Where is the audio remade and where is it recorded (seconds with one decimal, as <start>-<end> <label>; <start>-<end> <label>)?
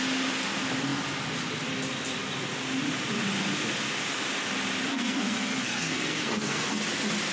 0.0-4.9 recorded; 4.9-6.8 remade; 6.8-7.3 recorded